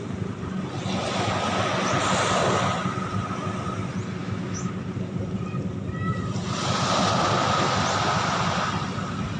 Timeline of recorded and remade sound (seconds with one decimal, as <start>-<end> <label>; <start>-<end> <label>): 0.0-4.2 recorded; 4.2-4.7 remade; 4.7-9.4 recorded